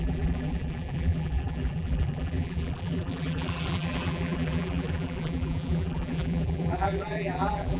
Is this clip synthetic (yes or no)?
yes